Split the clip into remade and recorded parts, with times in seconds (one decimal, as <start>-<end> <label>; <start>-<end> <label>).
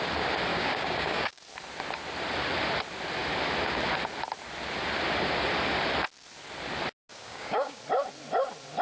0.0-0.5 recorded; 0.5-1.4 remade; 1.4-7.1 recorded; 7.1-7.8 remade; 7.8-8.8 recorded